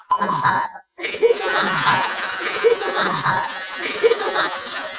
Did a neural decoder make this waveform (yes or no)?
yes